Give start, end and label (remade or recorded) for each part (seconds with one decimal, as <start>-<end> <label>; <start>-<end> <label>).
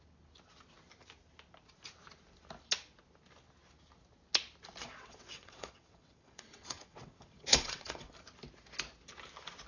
0.0-4.8 recorded; 4.8-8.1 remade; 8.1-9.7 recorded